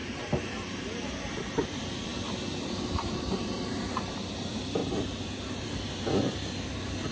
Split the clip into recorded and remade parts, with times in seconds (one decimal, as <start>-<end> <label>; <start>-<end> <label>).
0.0-1.7 recorded; 1.7-4.8 remade; 4.8-5.6 recorded; 5.6-7.1 remade